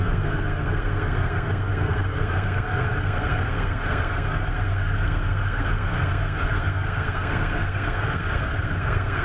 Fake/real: fake